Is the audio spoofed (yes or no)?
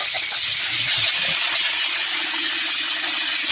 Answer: no